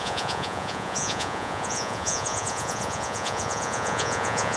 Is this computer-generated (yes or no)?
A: yes